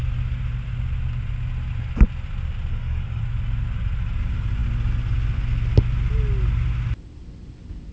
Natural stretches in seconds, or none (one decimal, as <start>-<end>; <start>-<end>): 0.0-2.7; 3.2-7.9